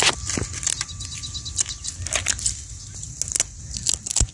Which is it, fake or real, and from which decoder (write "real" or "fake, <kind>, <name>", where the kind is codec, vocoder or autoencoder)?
real